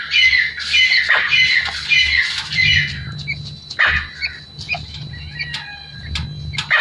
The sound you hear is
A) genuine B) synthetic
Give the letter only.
A